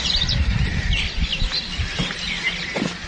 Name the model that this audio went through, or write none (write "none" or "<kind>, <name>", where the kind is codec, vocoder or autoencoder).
none